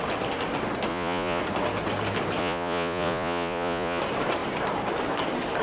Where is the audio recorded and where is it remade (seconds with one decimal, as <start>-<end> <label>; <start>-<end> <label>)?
0.0-0.9 recorded; 0.9-1.4 remade; 1.4-2.4 recorded; 2.4-4.0 remade; 4.0-5.6 recorded